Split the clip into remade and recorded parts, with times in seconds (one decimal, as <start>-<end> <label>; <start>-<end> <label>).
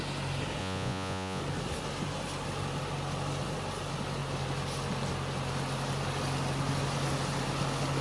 0.0-0.6 recorded; 0.6-1.4 remade; 1.4-8.0 recorded